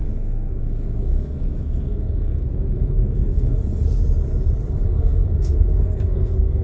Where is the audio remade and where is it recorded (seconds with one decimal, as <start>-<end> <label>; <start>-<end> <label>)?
0.0-3.6 remade; 3.6-4.9 recorded; 4.9-6.6 remade